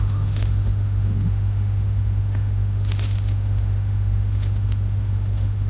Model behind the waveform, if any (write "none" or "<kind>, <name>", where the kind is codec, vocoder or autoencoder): autoencoder, DAC-VAE